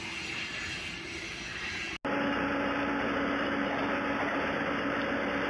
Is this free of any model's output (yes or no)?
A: yes